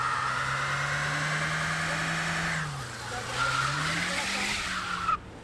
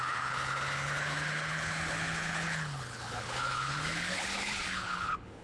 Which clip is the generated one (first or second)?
second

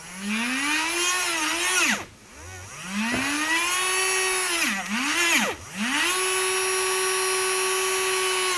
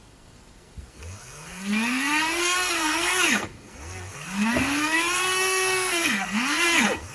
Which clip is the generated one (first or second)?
second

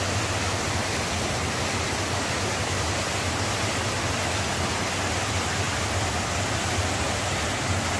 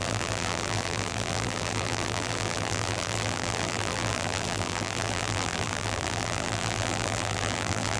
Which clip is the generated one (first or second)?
second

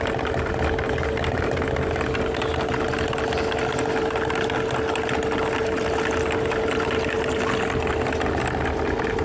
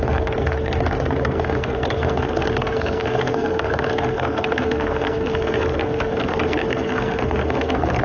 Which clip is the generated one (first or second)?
second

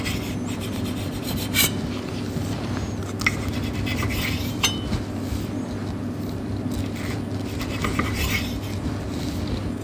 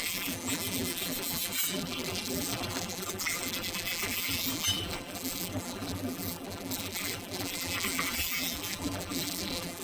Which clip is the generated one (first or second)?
second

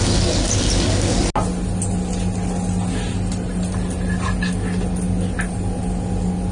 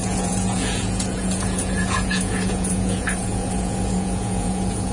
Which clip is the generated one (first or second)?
second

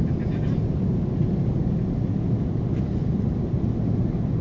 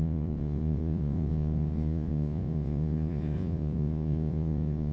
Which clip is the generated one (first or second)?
second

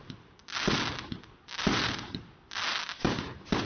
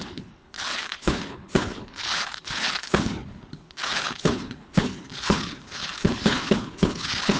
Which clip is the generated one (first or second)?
second